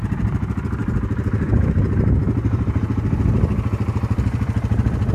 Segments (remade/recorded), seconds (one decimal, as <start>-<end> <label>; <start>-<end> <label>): 0.0-5.1 recorded